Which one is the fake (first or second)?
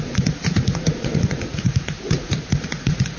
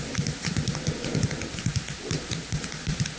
first